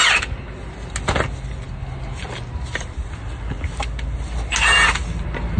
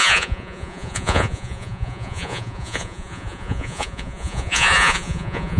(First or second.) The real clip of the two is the first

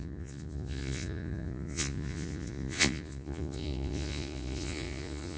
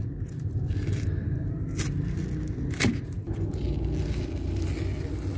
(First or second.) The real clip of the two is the second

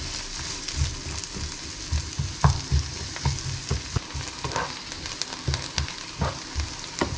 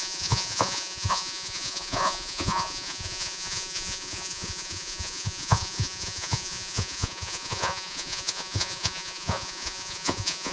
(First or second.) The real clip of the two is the first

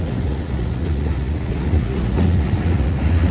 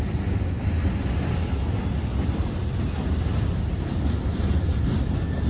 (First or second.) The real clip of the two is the second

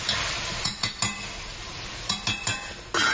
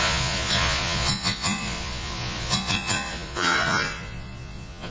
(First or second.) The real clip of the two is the first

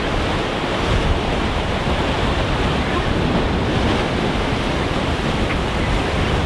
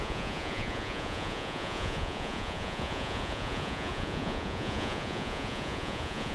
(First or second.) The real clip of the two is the first